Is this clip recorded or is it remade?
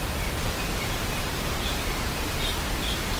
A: remade